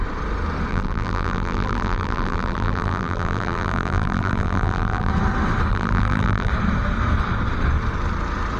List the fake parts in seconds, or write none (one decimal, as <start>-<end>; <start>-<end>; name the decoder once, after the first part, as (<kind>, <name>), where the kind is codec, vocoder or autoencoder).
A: 0.7-5.1 (vocoder, BigVGAN v2); 5.7-6.5